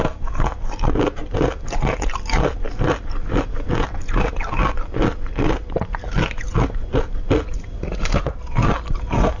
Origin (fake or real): real